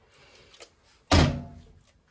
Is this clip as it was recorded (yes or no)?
yes